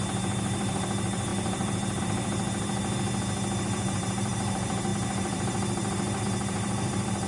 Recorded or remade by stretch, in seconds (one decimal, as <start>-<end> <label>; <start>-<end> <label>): 0.0-2.8 remade; 2.8-3.6 recorded; 3.6-7.3 remade